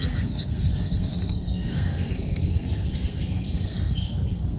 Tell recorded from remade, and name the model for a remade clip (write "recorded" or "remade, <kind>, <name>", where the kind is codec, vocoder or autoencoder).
remade, codec, SNAC